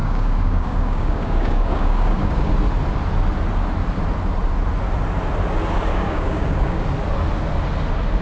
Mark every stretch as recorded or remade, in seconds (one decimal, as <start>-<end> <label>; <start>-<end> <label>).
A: 0.0-2.5 remade; 2.5-5.9 recorded; 5.9-6.8 remade; 6.8-8.2 recorded